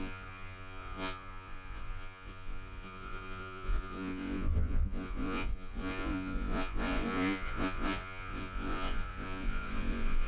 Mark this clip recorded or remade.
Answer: remade